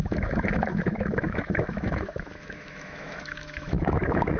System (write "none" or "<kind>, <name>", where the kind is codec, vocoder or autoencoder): autoencoder, DAC-VAE